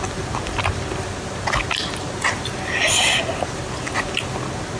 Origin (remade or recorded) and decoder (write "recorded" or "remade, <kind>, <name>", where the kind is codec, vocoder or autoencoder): recorded